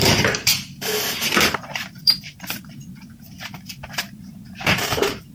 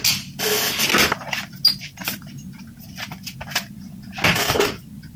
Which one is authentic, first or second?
second